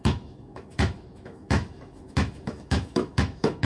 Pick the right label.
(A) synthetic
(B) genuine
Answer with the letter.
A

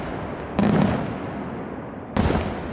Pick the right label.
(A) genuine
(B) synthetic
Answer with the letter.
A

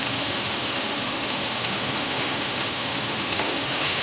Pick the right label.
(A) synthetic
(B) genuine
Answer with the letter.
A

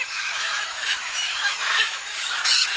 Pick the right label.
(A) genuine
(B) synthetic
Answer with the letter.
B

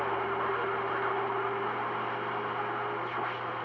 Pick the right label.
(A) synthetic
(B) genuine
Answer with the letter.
B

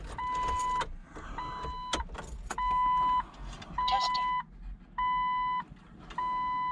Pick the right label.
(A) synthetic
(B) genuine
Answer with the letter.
B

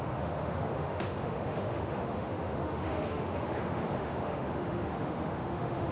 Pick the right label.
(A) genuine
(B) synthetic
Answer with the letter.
B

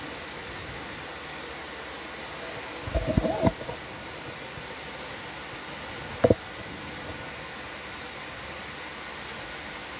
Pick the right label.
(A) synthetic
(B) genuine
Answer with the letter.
B